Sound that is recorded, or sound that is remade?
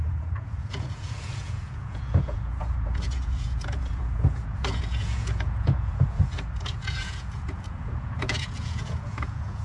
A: remade